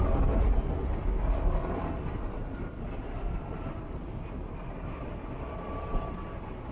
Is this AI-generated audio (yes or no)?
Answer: no